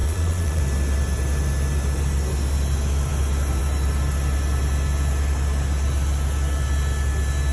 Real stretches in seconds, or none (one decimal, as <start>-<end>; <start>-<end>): 0.6-7.5